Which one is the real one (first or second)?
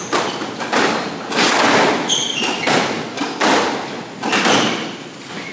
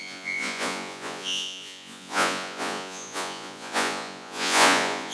first